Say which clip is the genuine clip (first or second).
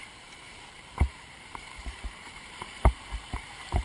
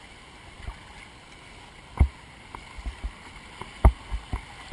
second